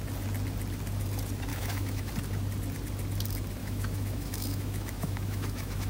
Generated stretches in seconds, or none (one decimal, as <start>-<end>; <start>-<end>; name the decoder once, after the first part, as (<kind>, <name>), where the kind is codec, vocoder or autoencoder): 1.5-2.1 (autoencoder, DAC-VAE); 3.6-5.9

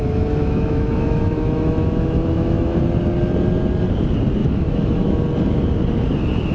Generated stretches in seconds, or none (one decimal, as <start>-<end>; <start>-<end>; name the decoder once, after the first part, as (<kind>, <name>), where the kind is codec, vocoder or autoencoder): 0.0-2.8 (autoencoder, DAC-VAE); 4.4-5.2

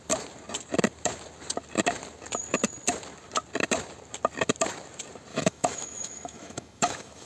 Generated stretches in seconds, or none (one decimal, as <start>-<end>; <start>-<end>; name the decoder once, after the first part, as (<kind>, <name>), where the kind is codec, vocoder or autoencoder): 5.3-7.3 (autoencoder, DAC-VAE)

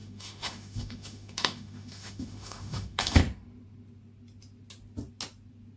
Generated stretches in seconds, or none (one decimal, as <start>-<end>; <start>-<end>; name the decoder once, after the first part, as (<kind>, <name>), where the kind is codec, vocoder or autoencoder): 0.0-3.2 (autoencoder, DAC-VAE)

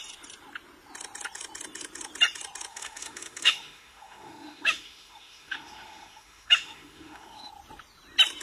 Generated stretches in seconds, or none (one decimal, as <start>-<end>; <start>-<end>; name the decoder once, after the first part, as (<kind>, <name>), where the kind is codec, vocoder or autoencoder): 2.7-7.5 (autoencoder, DAC-VAE)

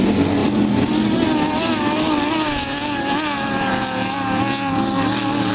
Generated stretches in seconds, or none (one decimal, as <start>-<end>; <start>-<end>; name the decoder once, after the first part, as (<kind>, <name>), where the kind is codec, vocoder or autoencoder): none

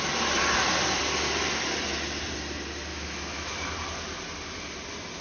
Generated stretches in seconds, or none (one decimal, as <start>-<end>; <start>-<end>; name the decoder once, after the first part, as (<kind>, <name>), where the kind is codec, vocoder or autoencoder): 2.9-3.5 (autoencoder, DAC-VAE)